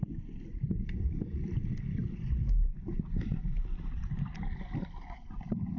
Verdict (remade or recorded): recorded